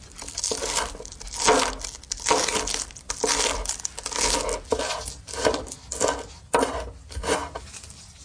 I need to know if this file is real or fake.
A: real